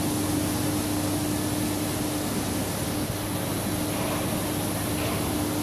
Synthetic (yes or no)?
no